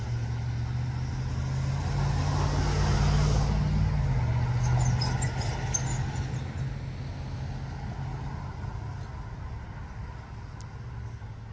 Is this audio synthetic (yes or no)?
no